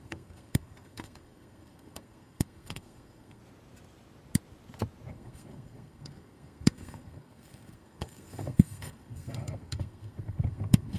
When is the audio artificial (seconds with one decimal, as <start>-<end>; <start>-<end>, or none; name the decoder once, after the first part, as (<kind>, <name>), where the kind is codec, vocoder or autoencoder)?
0.0-3.4 (codec, SNAC); 5.1-11.0